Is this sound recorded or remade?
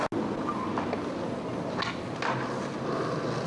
recorded